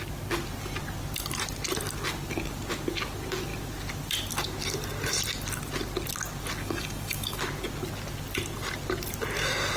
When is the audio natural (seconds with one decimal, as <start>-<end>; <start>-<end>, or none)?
0.0-6.6; 7.4-9.8